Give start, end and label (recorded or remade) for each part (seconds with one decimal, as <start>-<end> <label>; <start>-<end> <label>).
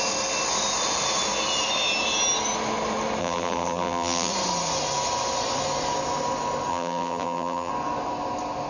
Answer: 0.0-3.2 recorded; 3.2-4.3 remade; 4.3-6.7 recorded; 6.7-7.7 remade; 7.7-8.7 recorded